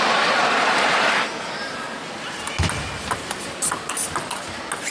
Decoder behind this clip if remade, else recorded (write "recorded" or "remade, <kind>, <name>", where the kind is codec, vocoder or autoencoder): recorded